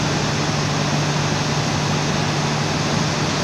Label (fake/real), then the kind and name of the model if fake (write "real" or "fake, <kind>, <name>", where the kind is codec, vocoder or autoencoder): real